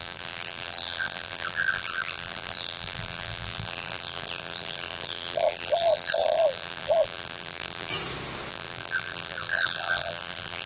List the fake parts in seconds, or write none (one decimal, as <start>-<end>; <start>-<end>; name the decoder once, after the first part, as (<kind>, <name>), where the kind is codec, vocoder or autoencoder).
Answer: 0.0-7.9 (vocoder, BigVGAN v2); 8.5-10.7